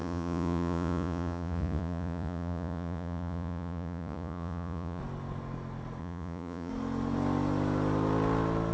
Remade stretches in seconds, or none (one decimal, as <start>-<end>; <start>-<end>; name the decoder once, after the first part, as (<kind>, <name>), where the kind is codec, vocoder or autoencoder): 0.0-5.0 (vocoder, Vocos); 6.0-6.7